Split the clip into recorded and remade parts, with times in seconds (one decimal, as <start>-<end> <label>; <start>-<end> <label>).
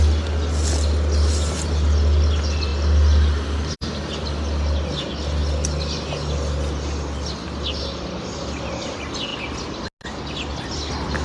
0.0-11.2 recorded